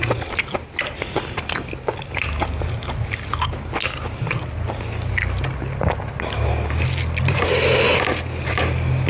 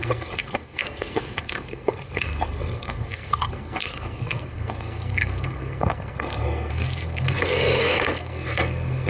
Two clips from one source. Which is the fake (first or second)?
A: second